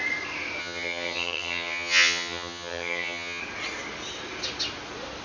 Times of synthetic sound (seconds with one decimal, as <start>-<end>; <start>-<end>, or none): 0.6-3.4